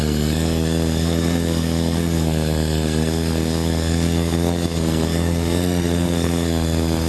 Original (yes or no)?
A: no